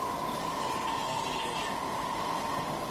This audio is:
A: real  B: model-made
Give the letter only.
B